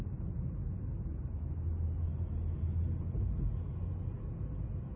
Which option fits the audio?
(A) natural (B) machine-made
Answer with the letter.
A